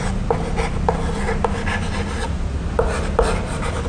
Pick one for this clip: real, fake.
real